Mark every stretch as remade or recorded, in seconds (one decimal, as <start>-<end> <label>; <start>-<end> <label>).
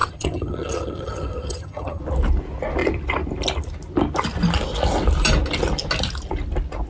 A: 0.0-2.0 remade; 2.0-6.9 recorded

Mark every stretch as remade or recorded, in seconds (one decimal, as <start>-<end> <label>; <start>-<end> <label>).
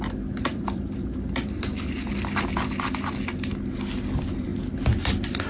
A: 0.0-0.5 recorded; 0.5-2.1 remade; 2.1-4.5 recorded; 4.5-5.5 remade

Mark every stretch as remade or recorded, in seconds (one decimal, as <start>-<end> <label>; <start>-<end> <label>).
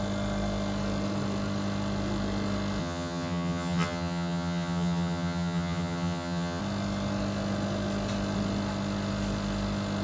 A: 0.0-2.8 recorded; 2.8-6.6 remade; 6.6-10.0 recorded